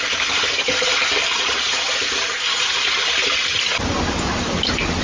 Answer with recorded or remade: recorded